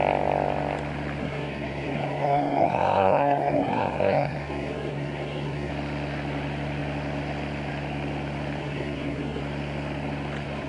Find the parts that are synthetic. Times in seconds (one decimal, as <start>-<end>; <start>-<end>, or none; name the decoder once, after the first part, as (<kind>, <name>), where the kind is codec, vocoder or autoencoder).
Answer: 1.2-5.7 (codec, SNAC); 8.6-9.4